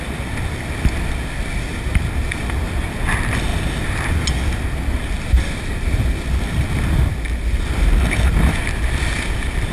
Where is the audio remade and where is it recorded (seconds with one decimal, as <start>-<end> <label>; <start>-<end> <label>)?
0.0-9.7 recorded